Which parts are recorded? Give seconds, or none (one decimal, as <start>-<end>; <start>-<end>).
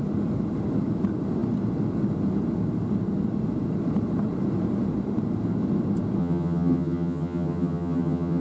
0.0-6.2